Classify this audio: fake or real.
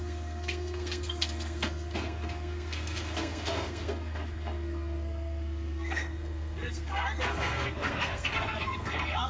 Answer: fake